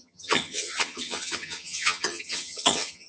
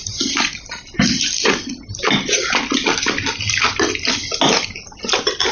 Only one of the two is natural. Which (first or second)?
second